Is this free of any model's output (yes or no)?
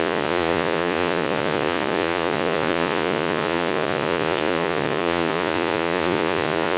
no